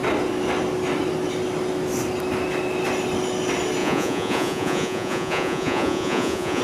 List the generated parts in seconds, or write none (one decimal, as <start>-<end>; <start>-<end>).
3.8-6.6